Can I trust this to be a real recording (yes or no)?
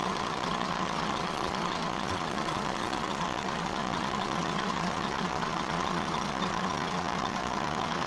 no